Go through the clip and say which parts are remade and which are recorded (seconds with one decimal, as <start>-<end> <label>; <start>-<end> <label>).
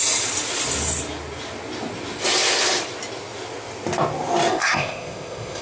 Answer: 0.0-4.5 recorded; 4.5-5.6 remade